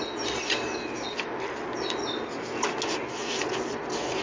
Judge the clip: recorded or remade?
recorded